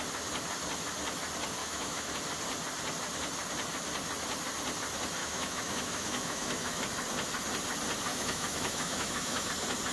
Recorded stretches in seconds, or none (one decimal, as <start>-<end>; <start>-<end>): 0.0-1.6; 2.1-5.2; 6.8-8.1; 9.5-9.9